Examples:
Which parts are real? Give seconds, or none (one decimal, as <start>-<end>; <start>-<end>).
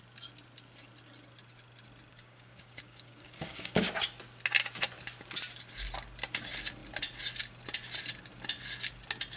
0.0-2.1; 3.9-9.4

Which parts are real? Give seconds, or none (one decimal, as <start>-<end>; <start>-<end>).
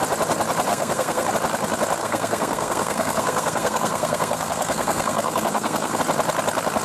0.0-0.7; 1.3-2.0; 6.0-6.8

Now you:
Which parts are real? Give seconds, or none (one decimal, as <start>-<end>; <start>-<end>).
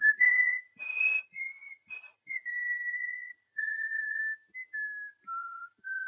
4.2-5.4